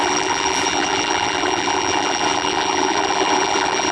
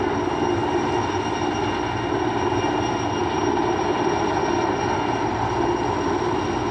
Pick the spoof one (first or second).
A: first